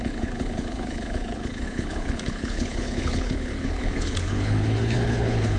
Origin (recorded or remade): remade